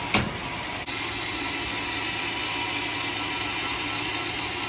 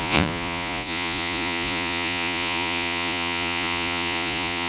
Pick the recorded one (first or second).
first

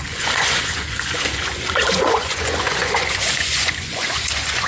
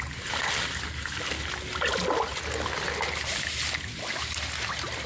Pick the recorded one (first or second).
second